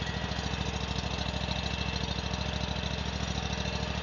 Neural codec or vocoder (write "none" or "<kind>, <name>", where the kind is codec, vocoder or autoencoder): none